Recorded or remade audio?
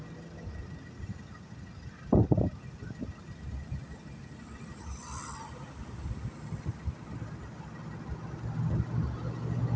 recorded